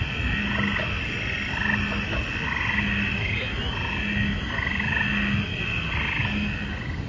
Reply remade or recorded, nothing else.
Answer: recorded